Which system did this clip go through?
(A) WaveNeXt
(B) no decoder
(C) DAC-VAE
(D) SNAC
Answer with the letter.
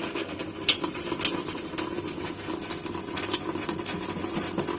B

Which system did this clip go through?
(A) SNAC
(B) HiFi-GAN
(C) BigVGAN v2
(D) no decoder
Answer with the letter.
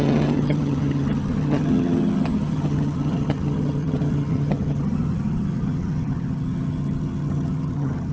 B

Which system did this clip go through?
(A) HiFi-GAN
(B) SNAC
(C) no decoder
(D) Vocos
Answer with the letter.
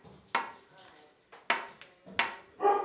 C